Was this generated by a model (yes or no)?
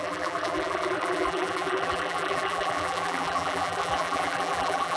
yes